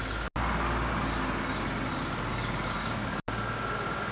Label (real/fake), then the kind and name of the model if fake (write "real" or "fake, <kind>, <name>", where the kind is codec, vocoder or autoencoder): real